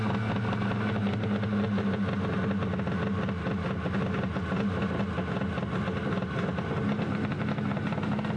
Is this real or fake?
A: real